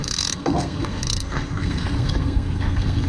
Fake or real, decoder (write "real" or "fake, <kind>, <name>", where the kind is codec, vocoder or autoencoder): fake, codec, SNAC